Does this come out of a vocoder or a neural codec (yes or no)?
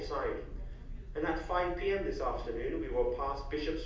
no